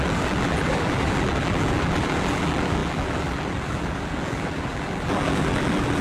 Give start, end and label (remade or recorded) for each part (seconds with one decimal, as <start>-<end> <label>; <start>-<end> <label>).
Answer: 0.0-6.0 remade